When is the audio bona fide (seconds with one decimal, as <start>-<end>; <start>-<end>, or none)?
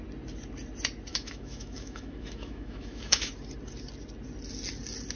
0.0-1.1; 3.3-5.2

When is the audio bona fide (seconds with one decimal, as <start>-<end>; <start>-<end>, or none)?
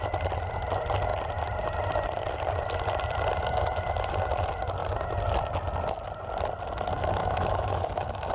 0.0-7.2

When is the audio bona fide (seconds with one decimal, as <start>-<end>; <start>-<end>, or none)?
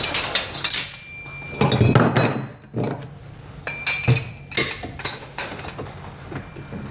0.0-5.0; 5.6-6.9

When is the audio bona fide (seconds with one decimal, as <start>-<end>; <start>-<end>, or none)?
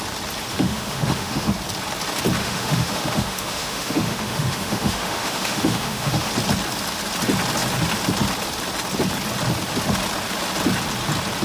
0.0-0.5; 1.5-2.4; 6.3-11.4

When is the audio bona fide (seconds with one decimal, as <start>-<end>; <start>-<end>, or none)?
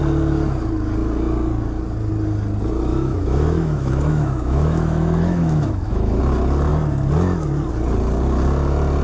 0.0-2.9; 6.2-9.0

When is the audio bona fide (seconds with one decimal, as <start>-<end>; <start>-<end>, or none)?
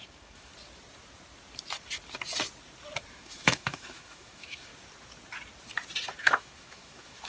0.5-3.1; 4.7-6.2